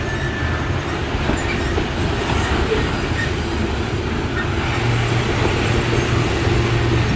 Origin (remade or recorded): recorded